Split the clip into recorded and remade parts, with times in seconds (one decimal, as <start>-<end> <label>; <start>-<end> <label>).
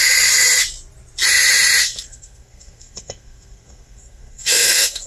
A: 0.0-1.8 recorded; 1.8-5.1 remade